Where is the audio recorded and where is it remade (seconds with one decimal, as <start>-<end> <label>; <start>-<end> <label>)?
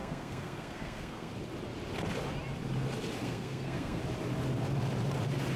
0.0-1.3 remade; 1.3-3.2 recorded; 3.2-4.0 remade; 4.0-5.6 recorded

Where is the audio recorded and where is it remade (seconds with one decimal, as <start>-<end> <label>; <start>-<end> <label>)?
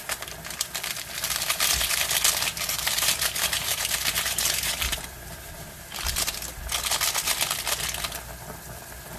0.0-2.5 recorded; 2.5-6.3 remade; 6.3-9.2 recorded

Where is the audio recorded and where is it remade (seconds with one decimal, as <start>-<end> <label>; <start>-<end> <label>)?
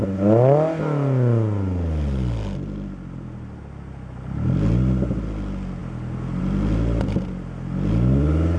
0.0-8.6 recorded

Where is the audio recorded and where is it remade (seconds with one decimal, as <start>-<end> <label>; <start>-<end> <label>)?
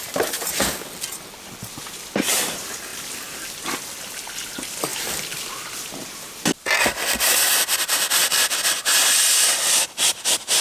0.0-10.6 recorded